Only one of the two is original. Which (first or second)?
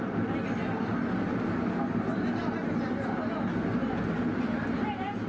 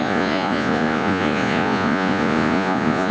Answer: first